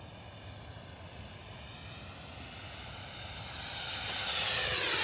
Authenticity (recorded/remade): recorded